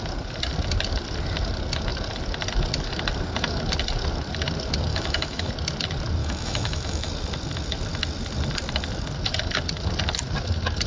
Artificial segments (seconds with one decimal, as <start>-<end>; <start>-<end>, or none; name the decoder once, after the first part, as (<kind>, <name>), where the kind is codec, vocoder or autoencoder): 4.9-5.5 (autoencoder, DAC-VAE); 6.2-7.1